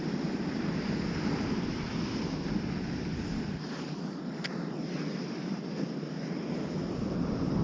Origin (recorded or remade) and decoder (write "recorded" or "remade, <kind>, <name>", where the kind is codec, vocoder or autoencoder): recorded